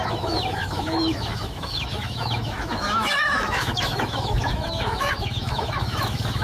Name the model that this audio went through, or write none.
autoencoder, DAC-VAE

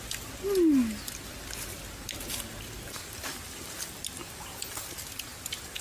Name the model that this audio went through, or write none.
none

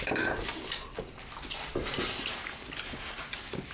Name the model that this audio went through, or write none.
none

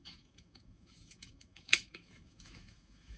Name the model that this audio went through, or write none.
autoencoder, DAC-VAE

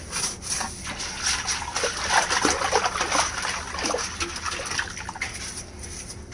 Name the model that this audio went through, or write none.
none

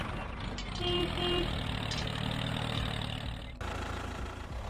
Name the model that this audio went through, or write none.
none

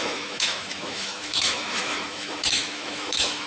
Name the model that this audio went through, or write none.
autoencoder, DAC-VAE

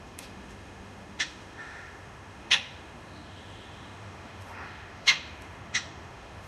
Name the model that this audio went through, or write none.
autoencoder, DAC-VAE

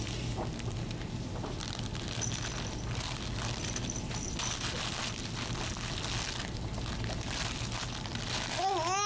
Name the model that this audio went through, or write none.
none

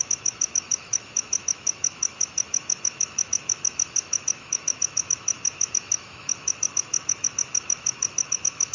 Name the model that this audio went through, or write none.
autoencoder, DAC-VAE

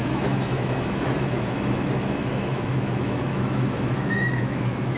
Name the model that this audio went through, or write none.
autoencoder, DAC-VAE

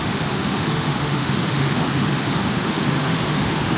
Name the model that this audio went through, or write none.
autoencoder, DAC-VAE